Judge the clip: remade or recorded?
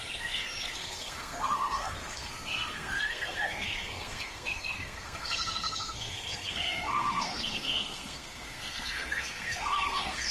remade